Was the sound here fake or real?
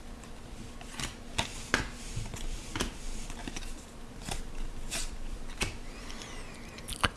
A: fake